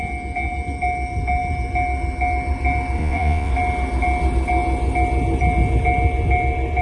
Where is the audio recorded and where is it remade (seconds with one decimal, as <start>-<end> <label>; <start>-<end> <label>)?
0.0-3.0 recorded; 3.0-3.5 remade; 3.5-6.8 recorded

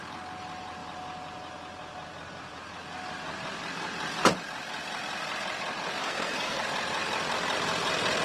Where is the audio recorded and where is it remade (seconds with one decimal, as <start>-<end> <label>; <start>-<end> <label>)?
0.0-6.0 recorded; 6.0-6.6 remade; 6.6-8.2 recorded

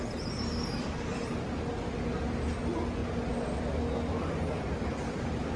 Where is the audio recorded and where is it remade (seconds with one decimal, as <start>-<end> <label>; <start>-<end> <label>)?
0.0-5.6 recorded

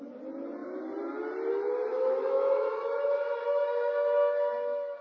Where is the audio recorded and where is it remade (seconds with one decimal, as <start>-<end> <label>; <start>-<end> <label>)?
0.0-1.9 recorded; 1.9-5.0 remade

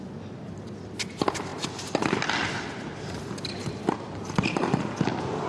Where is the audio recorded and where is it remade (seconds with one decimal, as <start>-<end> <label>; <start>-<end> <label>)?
0.0-5.5 recorded

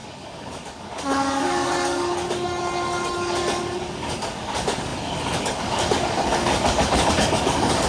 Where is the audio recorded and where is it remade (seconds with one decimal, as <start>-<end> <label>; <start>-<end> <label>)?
0.0-7.9 remade

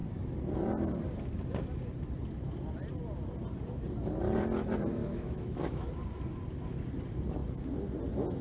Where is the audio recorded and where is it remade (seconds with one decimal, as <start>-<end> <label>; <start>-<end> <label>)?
0.0-5.0 recorded; 5.0-5.9 remade; 5.9-8.4 recorded

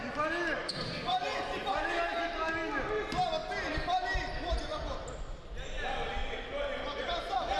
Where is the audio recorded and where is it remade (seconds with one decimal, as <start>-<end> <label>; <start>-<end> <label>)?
0.0-7.6 recorded